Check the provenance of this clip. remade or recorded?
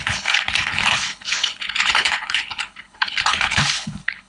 remade